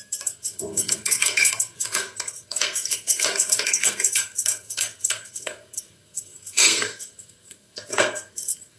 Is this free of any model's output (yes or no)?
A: no